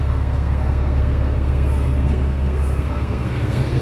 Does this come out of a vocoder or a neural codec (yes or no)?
yes